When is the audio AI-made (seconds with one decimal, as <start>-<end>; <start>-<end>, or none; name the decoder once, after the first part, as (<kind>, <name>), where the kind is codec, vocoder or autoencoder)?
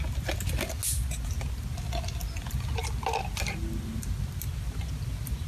none